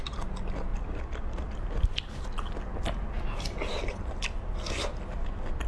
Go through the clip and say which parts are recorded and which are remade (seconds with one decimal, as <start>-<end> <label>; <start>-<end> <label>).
0.0-5.7 recorded